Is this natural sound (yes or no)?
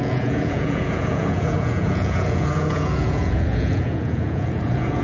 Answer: no